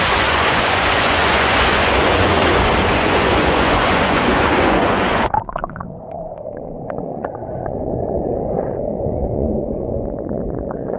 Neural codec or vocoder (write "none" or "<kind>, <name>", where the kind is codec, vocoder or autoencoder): vocoder, Vocos